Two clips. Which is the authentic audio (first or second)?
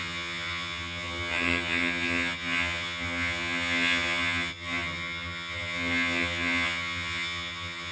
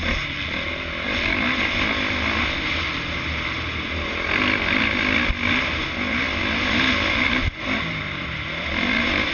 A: second